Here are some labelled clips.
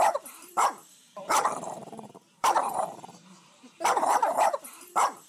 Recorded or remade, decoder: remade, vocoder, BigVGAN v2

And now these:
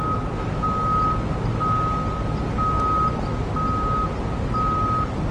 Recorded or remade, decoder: recorded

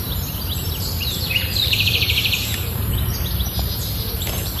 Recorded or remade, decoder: remade, vocoder, BigVGAN v2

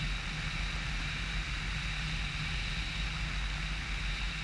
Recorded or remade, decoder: recorded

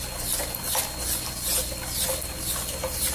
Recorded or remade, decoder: recorded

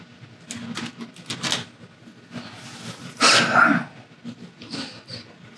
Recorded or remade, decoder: recorded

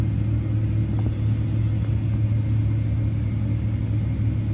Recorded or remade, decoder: recorded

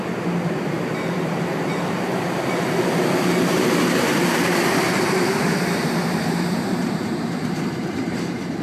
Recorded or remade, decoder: remade, vocoder, BigVGAN v2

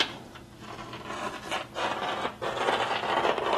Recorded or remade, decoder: recorded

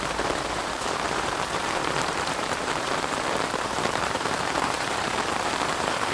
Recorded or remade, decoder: remade, vocoder, BigVGAN v2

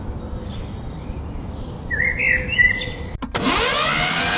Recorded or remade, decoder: recorded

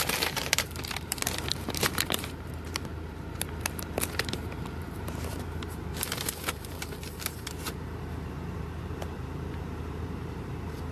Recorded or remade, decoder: remade, vocoder, BigVGAN v2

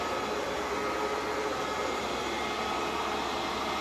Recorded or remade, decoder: recorded